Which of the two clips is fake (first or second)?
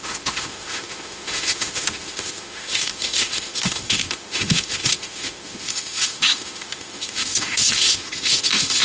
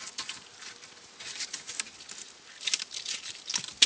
first